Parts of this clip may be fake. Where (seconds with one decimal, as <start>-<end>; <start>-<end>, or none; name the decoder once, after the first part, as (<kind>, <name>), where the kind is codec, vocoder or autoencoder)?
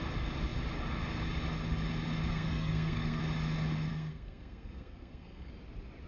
2.3-3.2 (codec, SNAC); 3.9-5.5